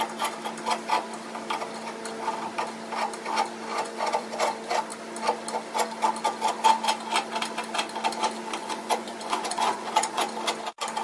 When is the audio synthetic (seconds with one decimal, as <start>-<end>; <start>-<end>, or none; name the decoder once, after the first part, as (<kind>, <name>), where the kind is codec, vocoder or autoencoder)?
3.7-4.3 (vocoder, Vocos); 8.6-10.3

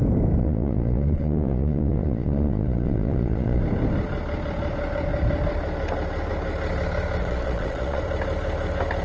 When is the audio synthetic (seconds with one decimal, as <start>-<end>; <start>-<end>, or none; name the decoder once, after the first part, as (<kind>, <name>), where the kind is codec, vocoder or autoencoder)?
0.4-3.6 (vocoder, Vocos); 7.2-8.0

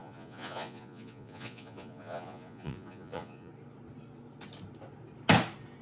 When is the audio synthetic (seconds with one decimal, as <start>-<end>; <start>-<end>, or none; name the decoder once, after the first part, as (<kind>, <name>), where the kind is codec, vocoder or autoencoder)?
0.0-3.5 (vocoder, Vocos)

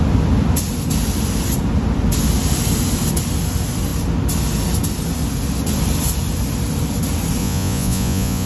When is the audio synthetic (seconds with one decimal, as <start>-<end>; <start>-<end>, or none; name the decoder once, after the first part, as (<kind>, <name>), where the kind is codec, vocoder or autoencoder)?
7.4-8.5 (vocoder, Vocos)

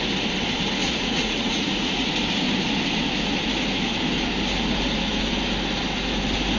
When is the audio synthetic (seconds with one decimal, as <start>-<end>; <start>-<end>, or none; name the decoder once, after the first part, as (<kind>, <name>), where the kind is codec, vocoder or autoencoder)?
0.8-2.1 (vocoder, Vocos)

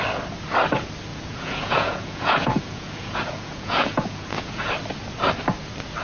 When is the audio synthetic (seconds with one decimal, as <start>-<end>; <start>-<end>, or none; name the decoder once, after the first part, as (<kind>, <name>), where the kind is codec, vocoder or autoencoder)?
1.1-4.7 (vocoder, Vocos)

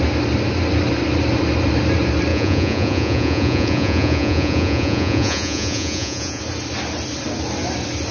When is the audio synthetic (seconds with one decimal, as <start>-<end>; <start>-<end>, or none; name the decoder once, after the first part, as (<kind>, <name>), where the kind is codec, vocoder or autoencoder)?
2.3-6.4 (vocoder, Vocos)

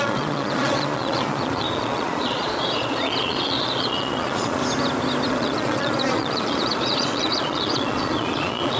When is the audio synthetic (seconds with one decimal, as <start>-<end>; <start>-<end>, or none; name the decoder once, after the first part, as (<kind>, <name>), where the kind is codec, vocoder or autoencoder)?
0.0-4.6 (vocoder, Vocos); 5.3-8.8